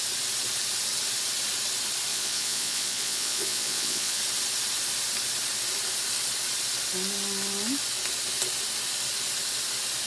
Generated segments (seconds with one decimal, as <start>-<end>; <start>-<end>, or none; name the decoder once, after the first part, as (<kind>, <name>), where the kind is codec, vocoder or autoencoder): 2.1-4.2 (vocoder, Vocos)

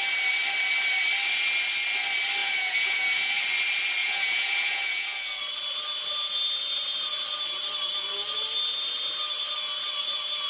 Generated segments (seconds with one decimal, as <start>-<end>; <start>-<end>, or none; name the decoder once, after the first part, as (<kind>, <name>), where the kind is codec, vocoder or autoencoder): 2.4-3.4 (vocoder, Vocos); 4.0-5.4

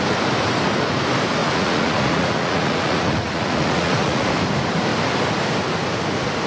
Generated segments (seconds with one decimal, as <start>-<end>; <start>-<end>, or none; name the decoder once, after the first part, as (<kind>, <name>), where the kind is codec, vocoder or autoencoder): 1.4-4.3 (vocoder, Vocos)

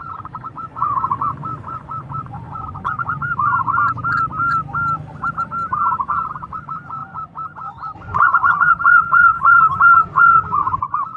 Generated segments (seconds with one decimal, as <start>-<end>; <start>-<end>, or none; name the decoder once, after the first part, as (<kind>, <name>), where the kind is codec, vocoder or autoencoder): 0.0-3.8 (vocoder, Vocos); 5.9-11.2

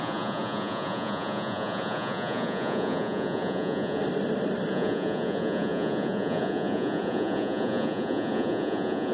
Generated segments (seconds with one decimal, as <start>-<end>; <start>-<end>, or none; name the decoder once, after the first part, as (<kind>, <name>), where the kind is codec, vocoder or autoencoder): 0.0-4.0 (vocoder, Vocos); 4.7-9.1

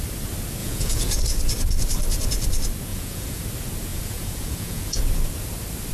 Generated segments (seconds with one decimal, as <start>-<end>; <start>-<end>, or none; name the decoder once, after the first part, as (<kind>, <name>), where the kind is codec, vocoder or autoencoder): 0.6-1.2 (vocoder, Vocos); 2.9-3.4; 3.9-5.0

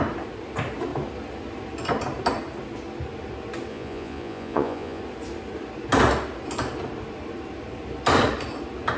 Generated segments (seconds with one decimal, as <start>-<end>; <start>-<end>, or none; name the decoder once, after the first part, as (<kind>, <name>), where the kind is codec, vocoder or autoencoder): 3.7-5.0 (vocoder, Vocos)

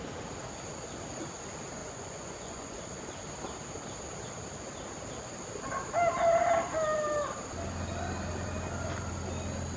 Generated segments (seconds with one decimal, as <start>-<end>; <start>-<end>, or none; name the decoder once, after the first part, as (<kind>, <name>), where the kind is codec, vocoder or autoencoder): 1.8-2.8 (vocoder, Vocos)